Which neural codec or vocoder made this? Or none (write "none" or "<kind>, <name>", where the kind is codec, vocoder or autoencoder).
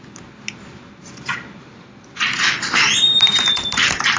none